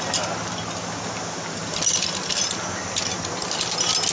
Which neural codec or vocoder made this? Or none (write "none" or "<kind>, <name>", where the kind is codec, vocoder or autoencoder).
none